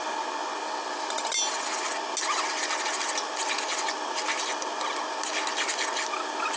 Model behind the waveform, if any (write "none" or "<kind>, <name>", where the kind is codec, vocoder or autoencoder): none